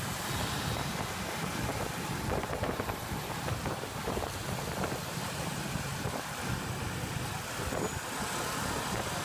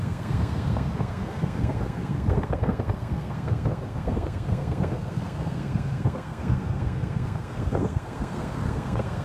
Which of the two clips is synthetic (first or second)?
second